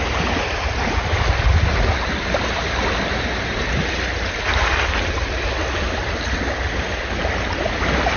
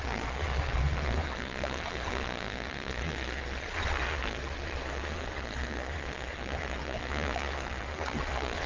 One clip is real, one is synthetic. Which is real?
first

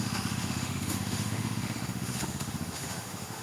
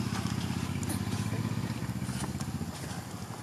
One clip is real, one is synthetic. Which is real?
second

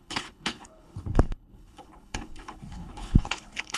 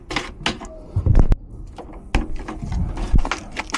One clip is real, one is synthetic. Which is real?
second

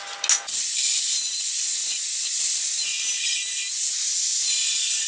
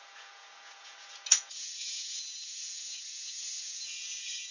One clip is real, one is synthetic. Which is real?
first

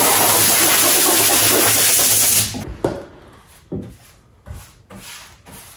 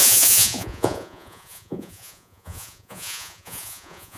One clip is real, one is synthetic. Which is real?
first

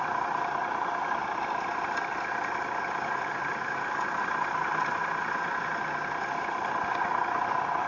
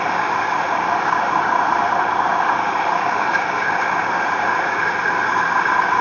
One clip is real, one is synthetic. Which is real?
first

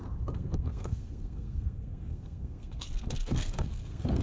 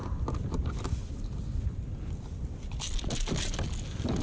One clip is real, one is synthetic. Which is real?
second